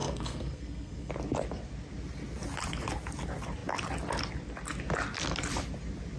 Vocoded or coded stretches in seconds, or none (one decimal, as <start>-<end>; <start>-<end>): 0.0-1.1